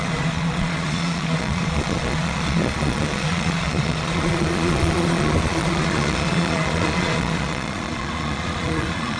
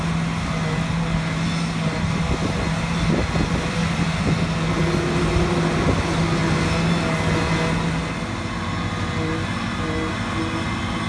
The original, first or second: second